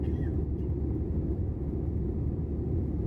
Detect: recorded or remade recorded